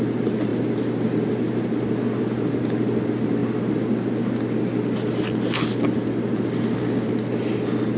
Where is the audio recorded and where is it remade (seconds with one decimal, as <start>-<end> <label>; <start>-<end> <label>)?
0.0-8.0 recorded